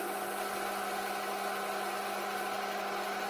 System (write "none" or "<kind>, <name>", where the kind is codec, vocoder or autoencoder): none